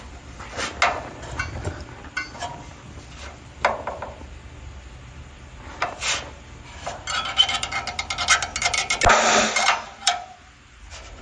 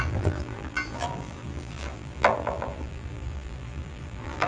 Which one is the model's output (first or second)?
second